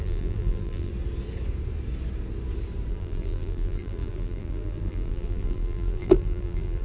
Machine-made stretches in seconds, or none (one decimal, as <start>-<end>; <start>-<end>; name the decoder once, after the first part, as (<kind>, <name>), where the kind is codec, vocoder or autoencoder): 0.0-0.9 (vocoder, BigVGAN v2); 2.9-6.8